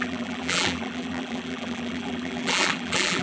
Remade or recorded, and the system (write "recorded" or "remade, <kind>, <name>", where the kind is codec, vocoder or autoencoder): remade, vocoder, BigVGAN v2